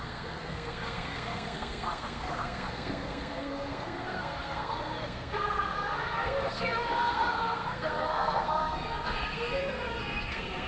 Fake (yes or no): yes